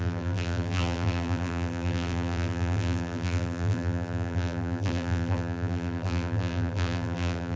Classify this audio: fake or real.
fake